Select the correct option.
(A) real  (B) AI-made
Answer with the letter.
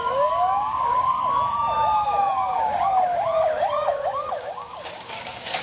B